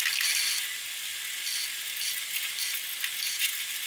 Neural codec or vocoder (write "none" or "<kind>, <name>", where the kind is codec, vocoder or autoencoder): none